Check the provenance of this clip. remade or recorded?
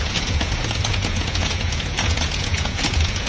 remade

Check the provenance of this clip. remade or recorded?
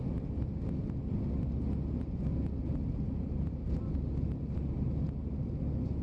recorded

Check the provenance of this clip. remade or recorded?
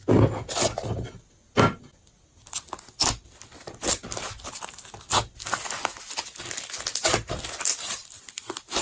recorded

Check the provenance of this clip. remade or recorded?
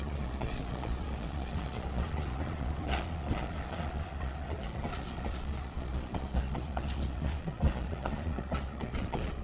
remade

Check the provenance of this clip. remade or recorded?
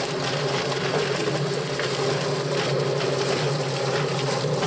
recorded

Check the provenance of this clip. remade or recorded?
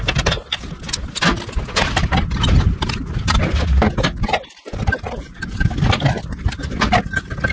recorded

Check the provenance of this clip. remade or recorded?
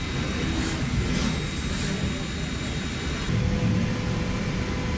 recorded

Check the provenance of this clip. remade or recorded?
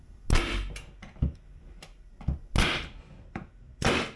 recorded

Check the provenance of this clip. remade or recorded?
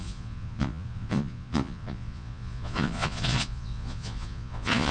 remade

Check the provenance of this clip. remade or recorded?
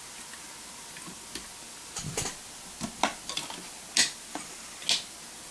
recorded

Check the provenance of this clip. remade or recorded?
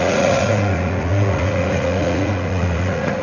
remade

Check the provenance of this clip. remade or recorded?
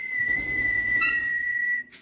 remade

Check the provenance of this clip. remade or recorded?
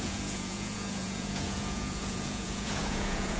remade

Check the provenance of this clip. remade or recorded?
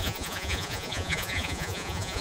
remade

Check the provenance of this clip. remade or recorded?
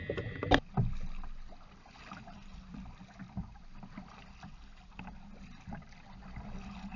recorded